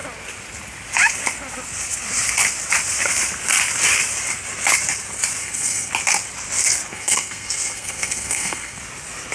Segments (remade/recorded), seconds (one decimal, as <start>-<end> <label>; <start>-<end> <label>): 0.0-5.4 recorded; 5.4-5.9 remade; 5.9-6.9 recorded; 6.9-8.8 remade; 8.8-9.3 recorded